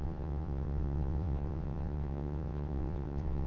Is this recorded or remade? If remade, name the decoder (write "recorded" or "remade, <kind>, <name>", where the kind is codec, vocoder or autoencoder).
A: remade, vocoder, WaveNeXt